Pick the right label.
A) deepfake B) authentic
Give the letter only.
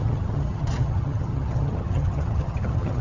A